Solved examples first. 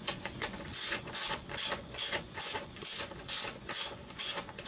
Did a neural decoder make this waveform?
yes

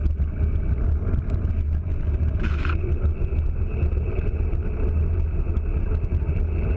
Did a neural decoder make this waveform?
no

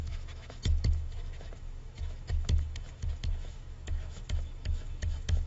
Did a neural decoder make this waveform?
yes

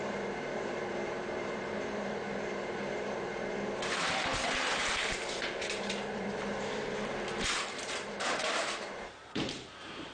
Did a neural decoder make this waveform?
yes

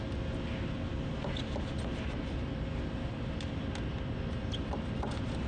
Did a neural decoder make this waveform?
no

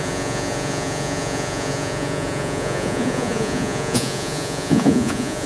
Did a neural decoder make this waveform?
yes